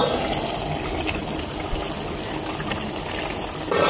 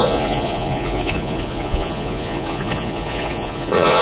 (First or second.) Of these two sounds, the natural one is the first